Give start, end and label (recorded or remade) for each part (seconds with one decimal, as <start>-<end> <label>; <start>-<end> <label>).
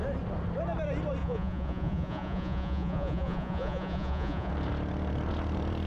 0.0-1.2 recorded; 1.2-4.5 remade; 4.5-5.9 recorded